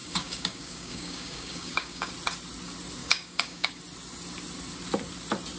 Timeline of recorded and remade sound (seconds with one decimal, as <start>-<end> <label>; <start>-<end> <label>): 0.0-2.1 remade; 2.1-3.0 recorded; 3.0-3.8 remade; 3.8-5.6 recorded